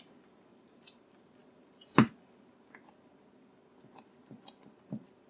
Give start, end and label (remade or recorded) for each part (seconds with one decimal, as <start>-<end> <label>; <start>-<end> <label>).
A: 0.0-5.3 recorded